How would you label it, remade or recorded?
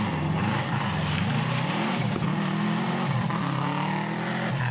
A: remade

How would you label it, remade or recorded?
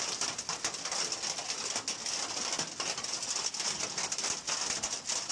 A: recorded